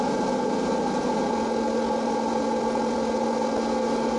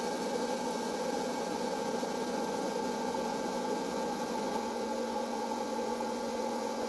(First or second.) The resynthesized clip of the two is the second